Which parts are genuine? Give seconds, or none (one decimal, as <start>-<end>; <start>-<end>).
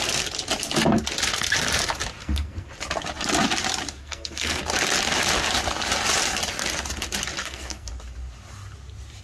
0.0-2.2; 2.7-4.0; 4.6-7.4; 7.9-9.2